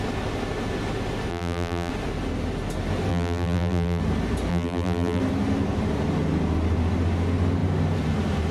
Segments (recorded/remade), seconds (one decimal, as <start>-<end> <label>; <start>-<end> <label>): 0.0-1.3 recorded; 1.3-1.9 remade; 1.9-3.1 recorded; 3.1-4.0 remade; 4.0-4.5 recorded; 4.5-5.2 remade; 5.2-8.5 recorded

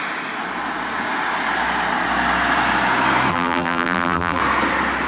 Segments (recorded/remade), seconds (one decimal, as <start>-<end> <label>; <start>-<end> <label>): 0.0-3.3 recorded; 3.3-4.4 remade; 4.4-5.1 recorded

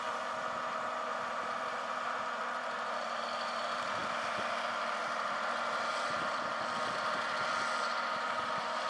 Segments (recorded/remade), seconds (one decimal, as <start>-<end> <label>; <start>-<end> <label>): 0.0-4.0 remade; 4.0-5.0 recorded; 5.0-8.9 remade

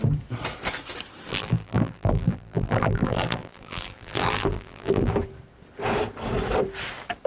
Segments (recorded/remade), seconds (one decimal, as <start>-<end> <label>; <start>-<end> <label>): 0.0-1.3 recorded; 1.3-5.1 remade; 5.1-7.3 recorded

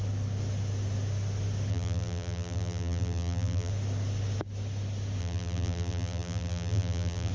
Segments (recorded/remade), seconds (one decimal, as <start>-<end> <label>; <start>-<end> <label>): 0.0-1.7 recorded; 1.7-3.7 remade; 3.7-5.2 recorded; 5.2-7.3 remade

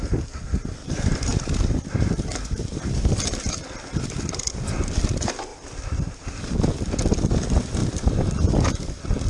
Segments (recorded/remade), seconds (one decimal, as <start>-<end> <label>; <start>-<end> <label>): 0.0-0.8 recorded; 0.8-3.5 remade; 3.5-5.5 recorded; 5.5-6.1 remade; 6.1-7.8 recorded; 7.8-8.6 remade; 8.6-9.3 recorded

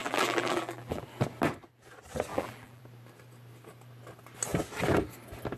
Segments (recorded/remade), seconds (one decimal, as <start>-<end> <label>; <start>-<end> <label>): 0.0-1.0 remade; 1.0-2.3 recorded; 2.3-2.8 remade; 2.8-5.6 recorded